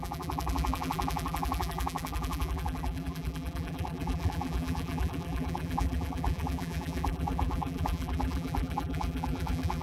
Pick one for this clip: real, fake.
fake